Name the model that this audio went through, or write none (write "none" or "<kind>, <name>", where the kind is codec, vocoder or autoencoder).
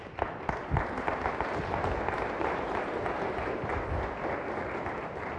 none